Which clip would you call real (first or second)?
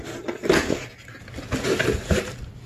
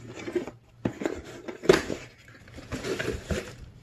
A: first